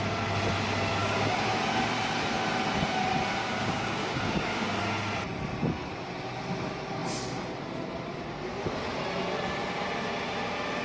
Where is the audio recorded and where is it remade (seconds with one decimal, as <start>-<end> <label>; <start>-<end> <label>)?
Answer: 0.0-1.0 recorded; 1.0-1.6 remade; 1.6-3.4 recorded; 3.4-4.8 remade; 4.8-10.8 recorded